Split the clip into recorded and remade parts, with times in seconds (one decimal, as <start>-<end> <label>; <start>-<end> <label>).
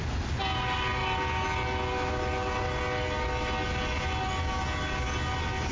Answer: 0.0-5.7 recorded